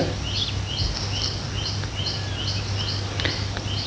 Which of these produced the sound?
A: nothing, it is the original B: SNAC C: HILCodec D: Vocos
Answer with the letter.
A